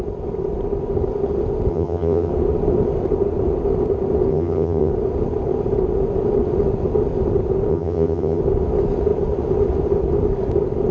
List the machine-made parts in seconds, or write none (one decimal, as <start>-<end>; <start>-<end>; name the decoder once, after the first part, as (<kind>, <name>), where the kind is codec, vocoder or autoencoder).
1.7-2.3 (vocoder, HiFi-GAN); 4.3-4.9; 7.7-8.4